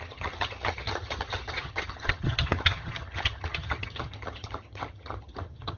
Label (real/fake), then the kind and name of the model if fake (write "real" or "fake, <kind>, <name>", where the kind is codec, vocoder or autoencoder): fake, vocoder, HiFi-GAN